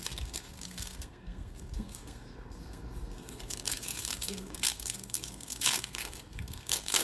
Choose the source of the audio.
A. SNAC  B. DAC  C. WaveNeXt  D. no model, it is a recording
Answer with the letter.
A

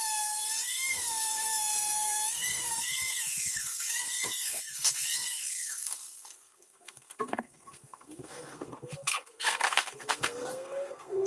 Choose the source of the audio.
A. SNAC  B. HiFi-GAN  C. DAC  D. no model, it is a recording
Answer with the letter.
A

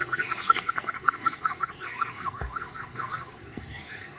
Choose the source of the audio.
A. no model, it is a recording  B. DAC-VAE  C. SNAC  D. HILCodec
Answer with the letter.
C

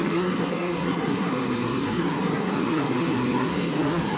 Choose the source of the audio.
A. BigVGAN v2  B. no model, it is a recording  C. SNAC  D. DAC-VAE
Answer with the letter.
C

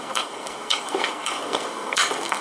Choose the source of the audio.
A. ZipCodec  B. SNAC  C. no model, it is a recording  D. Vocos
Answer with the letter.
B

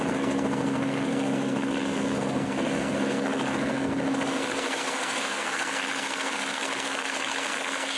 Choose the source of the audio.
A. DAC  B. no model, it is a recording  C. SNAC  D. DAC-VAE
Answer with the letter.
C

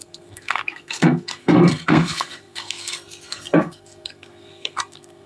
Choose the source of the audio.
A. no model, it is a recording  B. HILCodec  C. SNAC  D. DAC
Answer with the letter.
C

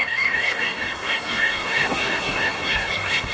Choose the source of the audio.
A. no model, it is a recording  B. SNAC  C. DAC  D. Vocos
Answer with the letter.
B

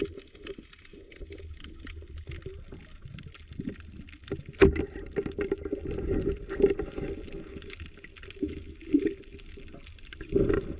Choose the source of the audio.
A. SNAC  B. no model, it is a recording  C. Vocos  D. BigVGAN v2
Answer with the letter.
B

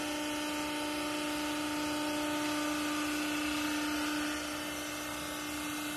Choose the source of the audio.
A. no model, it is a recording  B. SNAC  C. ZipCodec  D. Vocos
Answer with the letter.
A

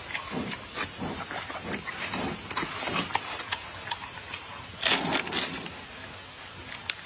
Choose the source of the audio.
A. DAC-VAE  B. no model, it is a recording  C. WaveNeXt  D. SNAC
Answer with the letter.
B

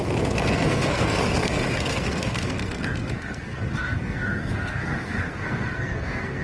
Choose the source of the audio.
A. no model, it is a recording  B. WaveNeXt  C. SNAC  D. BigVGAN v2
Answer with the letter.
C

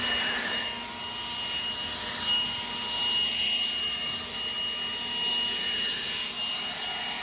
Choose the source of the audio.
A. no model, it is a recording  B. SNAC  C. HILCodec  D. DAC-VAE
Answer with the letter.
A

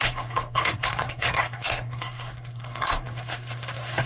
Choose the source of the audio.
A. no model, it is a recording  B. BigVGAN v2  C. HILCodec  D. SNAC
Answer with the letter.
D